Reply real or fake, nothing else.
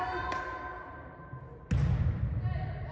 real